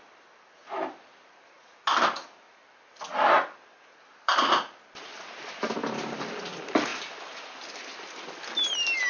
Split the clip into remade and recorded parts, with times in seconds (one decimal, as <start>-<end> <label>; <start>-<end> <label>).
0.0-9.1 recorded